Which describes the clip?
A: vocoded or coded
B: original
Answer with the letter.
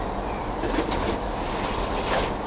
B